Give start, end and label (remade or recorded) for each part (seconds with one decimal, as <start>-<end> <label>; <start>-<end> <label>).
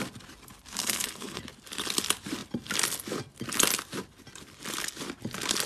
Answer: 0.0-0.8 recorded; 0.8-1.4 remade; 1.4-5.7 recorded